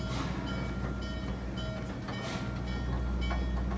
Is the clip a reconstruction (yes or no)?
no